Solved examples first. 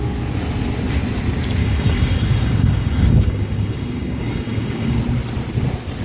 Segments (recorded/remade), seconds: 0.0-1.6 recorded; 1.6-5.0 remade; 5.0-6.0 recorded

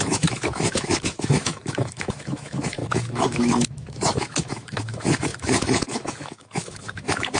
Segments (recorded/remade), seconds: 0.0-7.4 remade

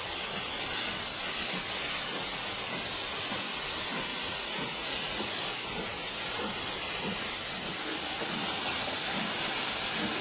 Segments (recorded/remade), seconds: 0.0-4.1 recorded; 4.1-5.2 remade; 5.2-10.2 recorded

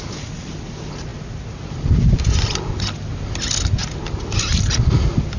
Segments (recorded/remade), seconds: 0.0-5.4 recorded